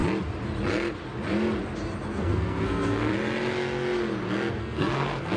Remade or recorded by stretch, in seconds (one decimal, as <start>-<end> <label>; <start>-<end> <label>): 0.0-2.1 recorded; 2.1-3.1 remade; 3.1-4.5 recorded; 4.5-5.4 remade